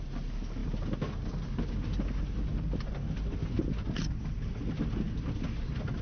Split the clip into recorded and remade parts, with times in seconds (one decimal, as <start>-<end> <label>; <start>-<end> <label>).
0.0-6.0 recorded